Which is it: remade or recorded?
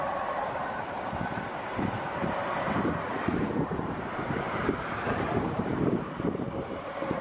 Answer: remade